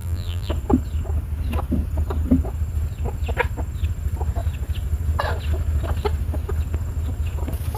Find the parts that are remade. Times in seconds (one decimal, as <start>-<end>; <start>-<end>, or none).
0.0-0.5